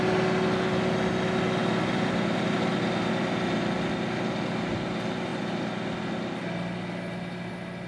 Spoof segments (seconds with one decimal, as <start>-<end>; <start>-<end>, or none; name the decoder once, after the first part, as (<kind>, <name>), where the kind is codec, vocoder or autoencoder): none